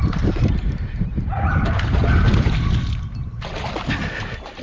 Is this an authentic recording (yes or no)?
yes